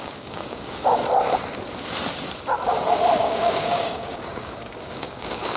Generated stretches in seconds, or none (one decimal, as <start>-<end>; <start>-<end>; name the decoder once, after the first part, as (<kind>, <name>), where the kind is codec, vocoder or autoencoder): 0.0-1.0 (codec, DAC); 3.2-5.6